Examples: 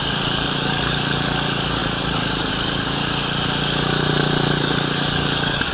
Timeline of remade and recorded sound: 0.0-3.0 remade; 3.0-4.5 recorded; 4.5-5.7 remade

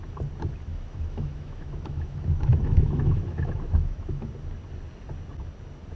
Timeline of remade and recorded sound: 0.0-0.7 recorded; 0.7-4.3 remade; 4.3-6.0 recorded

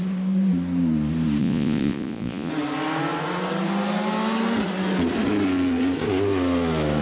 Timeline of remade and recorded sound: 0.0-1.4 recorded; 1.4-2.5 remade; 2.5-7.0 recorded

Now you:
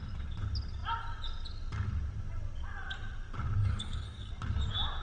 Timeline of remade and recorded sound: 0.0-3.6 recorded; 3.6-4.3 remade; 4.3-5.0 recorded